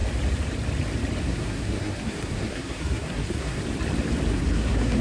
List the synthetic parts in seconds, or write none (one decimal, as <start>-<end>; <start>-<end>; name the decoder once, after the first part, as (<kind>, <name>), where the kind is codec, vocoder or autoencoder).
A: 1.2-3.6 (codec, SNAC); 4.3-5.0